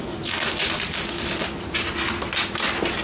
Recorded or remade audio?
recorded